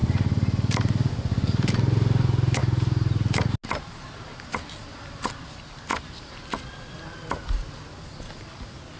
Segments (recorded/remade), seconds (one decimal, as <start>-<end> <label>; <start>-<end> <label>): 0.0-1.1 remade; 1.1-5.9 recorded; 5.9-6.4 remade; 6.4-9.0 recorded